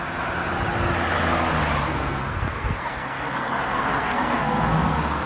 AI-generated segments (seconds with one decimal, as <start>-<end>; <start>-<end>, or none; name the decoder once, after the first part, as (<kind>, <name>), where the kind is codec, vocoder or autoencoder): 1.9-5.3 (codec, SNAC)